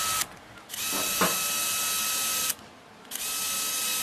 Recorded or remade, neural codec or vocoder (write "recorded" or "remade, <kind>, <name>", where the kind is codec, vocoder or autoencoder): recorded